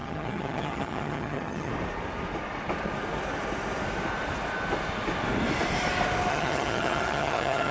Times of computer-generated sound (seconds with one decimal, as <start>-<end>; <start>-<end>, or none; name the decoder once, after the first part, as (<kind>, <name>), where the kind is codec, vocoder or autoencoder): 0.0-1.7 (vocoder, HiFi-GAN); 6.3-7.7